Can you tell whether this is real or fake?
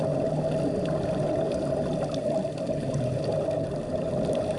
real